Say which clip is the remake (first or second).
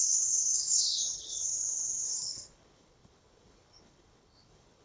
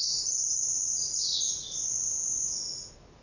first